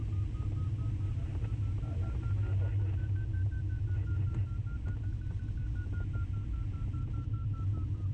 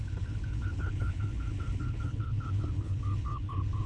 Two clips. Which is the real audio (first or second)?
first